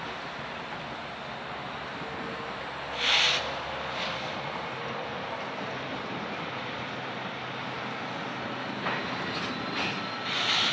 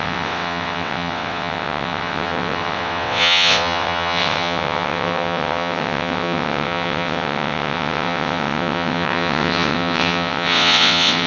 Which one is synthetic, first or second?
second